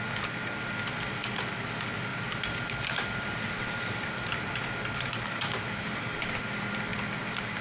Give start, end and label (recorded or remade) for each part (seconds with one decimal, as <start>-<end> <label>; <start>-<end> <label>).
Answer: 0.0-2.1 recorded; 2.1-6.4 remade; 6.4-7.6 recorded